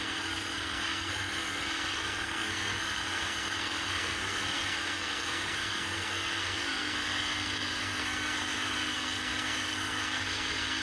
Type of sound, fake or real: fake